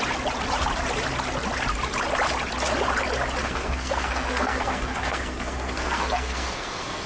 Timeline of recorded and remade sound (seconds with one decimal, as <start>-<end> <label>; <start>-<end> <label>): 0.0-3.4 recorded; 3.4-7.1 remade